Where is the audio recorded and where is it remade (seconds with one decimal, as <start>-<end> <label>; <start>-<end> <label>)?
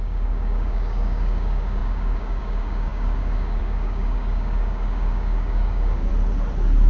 0.0-6.1 remade; 6.1-6.9 recorded